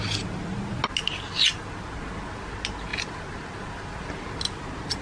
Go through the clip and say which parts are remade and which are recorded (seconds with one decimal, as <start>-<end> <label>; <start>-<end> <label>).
0.0-5.0 recorded